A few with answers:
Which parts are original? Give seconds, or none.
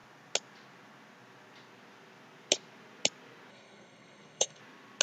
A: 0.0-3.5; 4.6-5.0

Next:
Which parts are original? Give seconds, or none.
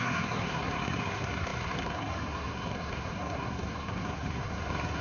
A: none